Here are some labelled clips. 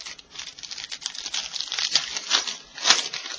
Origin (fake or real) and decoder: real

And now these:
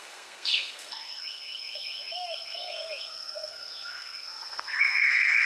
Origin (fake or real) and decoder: fake, codec, SNAC